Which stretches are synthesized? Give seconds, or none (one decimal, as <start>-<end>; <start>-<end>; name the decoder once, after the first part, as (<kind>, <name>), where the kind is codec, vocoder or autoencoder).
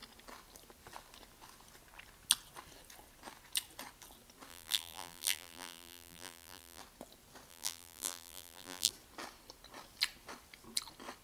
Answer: 4.5-6.8 (vocoder, BigVGAN v2); 7.5-8.9